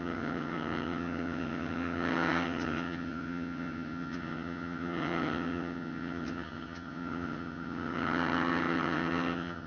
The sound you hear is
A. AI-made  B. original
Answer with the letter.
A